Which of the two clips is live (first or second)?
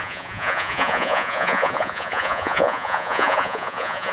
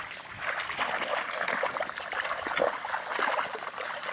second